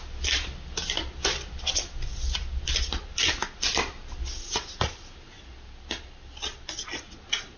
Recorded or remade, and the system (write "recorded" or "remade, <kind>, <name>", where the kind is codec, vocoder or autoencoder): recorded